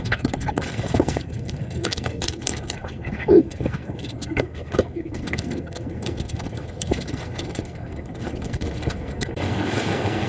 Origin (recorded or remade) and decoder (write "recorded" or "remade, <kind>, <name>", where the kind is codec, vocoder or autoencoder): remade, codec, SNAC